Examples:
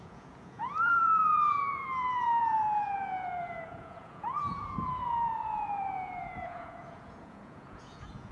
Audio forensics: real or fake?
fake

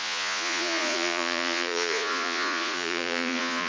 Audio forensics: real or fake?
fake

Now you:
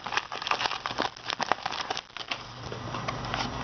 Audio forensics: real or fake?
real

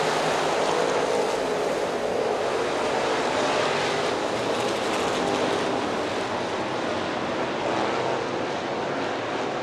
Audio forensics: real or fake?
real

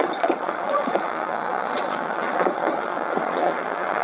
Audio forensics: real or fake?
fake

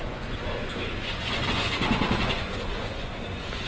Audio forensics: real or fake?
fake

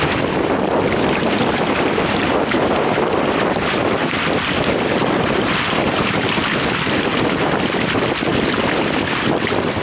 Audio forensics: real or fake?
real